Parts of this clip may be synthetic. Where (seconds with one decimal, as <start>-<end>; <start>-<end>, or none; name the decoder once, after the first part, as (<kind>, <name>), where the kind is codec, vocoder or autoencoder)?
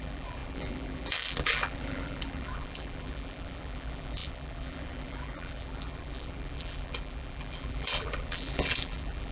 0.0-9.3 (vocoder, BigVGAN v2)